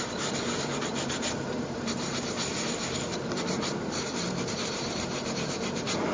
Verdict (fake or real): fake